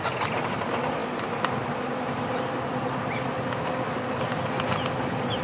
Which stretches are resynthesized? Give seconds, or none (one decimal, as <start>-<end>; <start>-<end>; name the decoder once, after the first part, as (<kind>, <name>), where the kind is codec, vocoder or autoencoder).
none